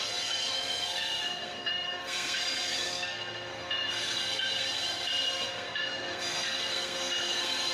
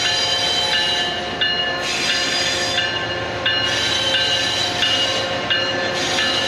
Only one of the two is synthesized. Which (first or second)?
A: first